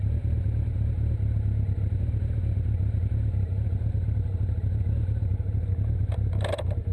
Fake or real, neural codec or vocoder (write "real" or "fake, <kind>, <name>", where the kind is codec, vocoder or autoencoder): fake, vocoder, BigVGAN v2